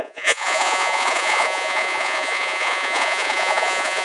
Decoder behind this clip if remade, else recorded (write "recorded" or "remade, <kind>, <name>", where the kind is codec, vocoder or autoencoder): remade, vocoder, Vocos